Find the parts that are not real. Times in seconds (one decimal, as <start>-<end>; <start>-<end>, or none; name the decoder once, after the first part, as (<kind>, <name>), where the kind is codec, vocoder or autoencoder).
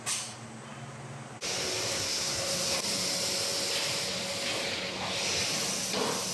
1.9-2.8 (codec, SNAC)